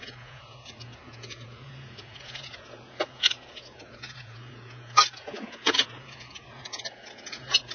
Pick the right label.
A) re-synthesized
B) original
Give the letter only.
A